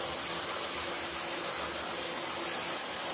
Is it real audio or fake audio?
real